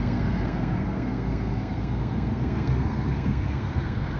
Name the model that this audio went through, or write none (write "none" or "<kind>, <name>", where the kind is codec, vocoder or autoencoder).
codec, SNAC